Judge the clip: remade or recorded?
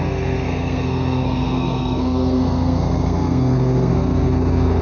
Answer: remade